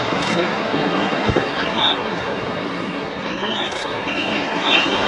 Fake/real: fake